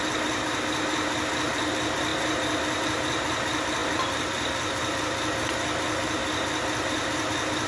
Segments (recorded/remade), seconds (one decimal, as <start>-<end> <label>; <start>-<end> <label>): 0.0-2.1 recorded; 2.1-2.8 remade; 2.8-3.8 recorded; 3.8-5.0 remade; 5.0-7.7 recorded